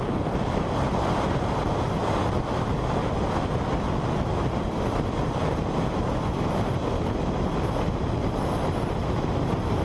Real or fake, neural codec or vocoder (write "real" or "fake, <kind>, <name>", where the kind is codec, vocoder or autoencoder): real